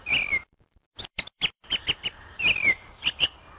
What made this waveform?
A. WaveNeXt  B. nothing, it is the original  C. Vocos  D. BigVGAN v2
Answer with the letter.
D